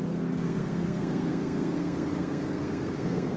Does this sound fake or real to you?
fake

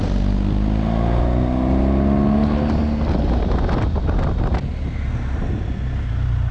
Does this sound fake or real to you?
real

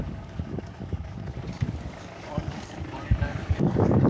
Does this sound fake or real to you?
fake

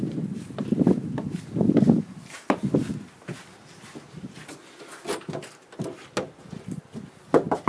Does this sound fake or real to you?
real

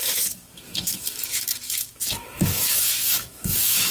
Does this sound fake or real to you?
fake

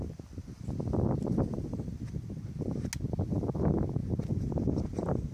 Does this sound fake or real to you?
real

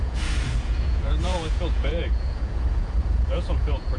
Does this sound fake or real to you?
fake